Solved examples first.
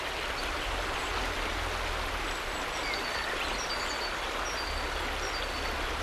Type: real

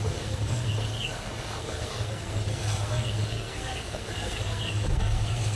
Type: fake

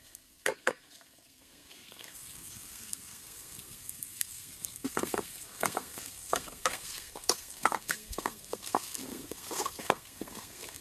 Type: fake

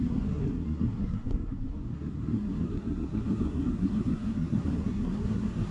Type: fake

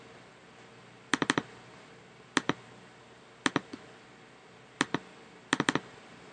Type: real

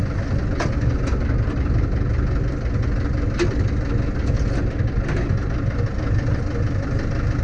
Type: real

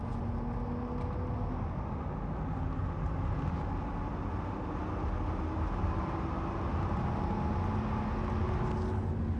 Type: real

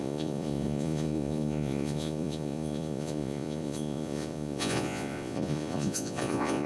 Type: fake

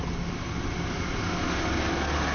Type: real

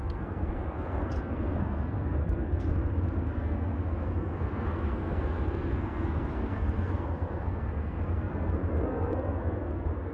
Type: fake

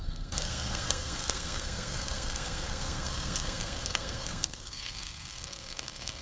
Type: fake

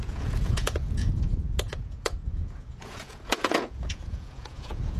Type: fake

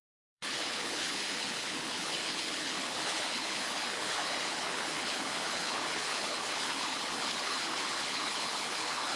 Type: fake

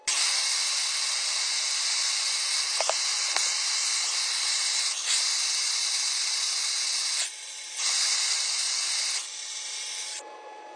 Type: real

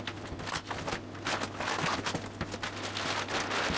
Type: real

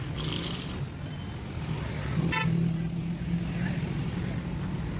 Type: real